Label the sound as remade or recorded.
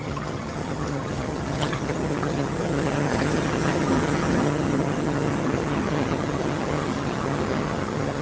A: remade